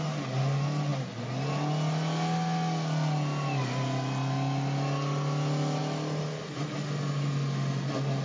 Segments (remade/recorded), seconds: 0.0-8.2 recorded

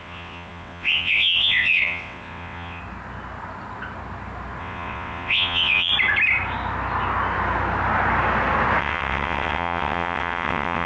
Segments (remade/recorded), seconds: 0.0-2.8 remade; 2.8-4.6 recorded; 4.6-5.9 remade; 5.9-8.8 recorded; 8.8-10.9 remade

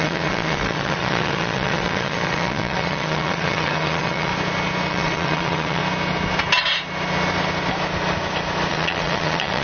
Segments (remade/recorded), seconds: 0.0-4.3 remade; 4.3-4.9 recorded; 4.9-5.8 remade; 5.8-8.7 recorded; 8.7-9.6 remade